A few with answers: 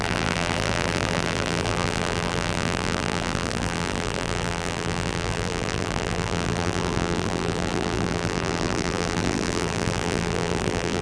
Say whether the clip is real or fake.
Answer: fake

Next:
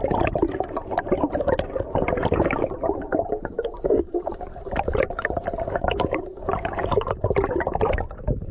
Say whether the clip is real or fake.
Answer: fake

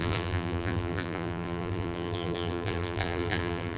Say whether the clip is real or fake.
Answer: fake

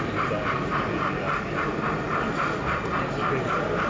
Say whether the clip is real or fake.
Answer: real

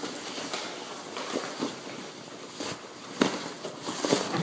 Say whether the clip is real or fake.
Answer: real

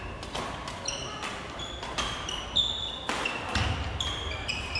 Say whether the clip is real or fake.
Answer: fake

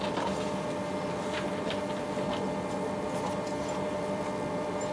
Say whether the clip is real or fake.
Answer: fake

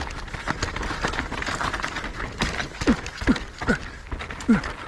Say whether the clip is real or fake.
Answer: real